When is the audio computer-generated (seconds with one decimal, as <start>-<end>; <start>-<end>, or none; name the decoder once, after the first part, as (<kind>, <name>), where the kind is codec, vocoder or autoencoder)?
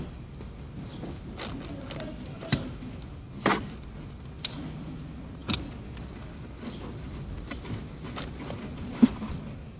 none